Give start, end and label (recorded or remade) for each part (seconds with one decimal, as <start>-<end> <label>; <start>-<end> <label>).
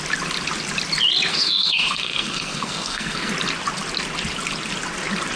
0.0-1.3 recorded; 1.3-3.3 remade; 3.3-5.4 recorded